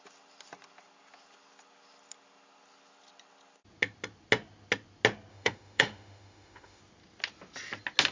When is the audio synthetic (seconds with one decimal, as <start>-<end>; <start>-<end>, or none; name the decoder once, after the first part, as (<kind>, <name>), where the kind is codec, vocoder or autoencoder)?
5.3-6.8 (autoencoder, DAC-VAE)